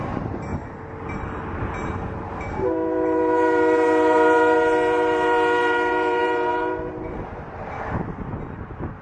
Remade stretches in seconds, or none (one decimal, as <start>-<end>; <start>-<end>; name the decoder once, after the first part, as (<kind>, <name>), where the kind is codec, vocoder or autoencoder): 0.0-0.5 (vocoder, BigVGAN v2); 1.0-9.0